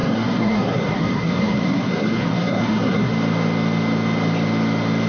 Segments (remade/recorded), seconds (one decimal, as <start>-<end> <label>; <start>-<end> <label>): 0.0-3.1 remade; 3.1-5.1 recorded